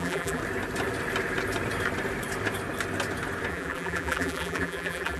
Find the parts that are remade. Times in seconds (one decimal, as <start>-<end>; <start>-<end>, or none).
0.0-0.4; 3.5-5.2